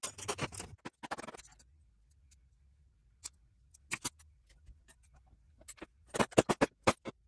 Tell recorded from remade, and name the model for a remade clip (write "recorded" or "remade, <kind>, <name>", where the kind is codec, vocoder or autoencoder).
recorded